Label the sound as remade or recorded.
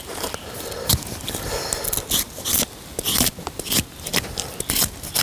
recorded